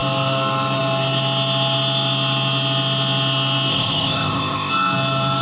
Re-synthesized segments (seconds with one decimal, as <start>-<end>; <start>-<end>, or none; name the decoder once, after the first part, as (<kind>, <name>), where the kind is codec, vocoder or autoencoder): 3.7-4.7 (codec, ZipCodec)